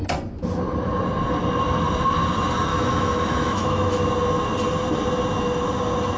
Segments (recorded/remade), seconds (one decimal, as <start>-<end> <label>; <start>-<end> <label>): 0.0-2.7 recorded; 2.7-4.1 remade; 4.1-6.2 recorded